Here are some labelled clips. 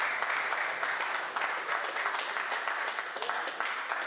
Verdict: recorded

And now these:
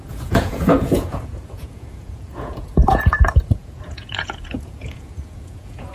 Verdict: remade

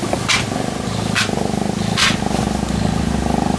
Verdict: recorded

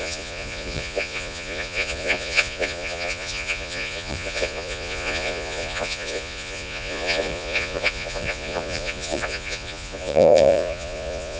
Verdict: remade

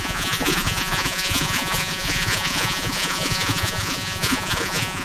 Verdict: remade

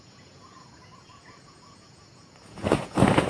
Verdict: remade